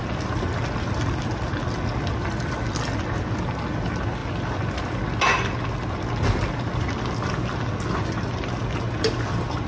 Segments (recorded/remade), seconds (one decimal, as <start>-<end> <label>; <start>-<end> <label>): 0.0-9.7 recorded